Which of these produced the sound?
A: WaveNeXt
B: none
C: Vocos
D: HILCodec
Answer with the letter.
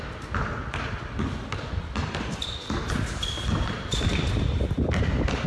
B